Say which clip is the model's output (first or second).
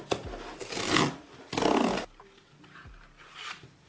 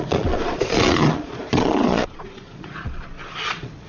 second